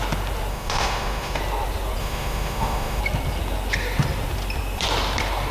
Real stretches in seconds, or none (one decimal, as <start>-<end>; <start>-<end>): 0.0-0.5; 1.4-2.0; 3.0-5.5